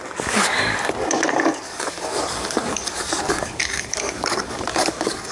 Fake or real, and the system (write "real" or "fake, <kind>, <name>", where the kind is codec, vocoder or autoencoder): fake, codec, DAC